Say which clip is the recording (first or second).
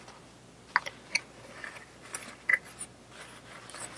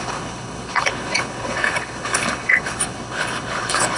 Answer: first